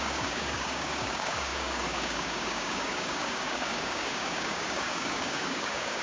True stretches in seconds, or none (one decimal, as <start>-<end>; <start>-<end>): none